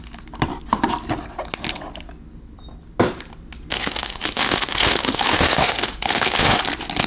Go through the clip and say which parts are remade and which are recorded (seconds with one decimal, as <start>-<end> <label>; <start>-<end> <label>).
0.0-3.7 recorded; 3.7-6.6 remade; 6.6-7.1 recorded